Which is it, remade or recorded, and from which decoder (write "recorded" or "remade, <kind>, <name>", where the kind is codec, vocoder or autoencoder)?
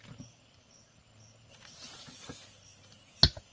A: recorded